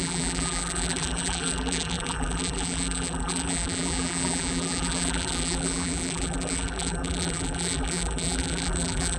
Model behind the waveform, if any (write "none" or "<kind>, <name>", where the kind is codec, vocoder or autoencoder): vocoder, BigVGAN v2